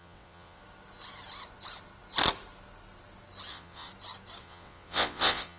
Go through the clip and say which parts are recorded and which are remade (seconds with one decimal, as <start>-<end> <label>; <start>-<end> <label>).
0.0-0.6 remade; 0.6-3.5 recorded; 3.5-3.9 remade; 3.9-4.4 recorded; 4.4-5.6 remade